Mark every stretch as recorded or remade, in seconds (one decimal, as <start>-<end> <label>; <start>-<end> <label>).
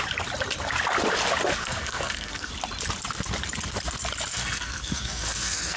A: 0.0-1.6 recorded; 1.6-2.5 remade; 2.5-4.3 recorded; 4.3-5.8 remade